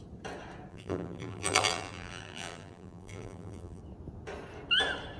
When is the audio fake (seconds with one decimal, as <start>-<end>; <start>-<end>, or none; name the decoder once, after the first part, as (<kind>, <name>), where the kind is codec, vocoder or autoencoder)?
0.7-3.8 (vocoder, BigVGAN v2)